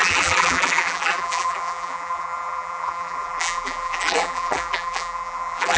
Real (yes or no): no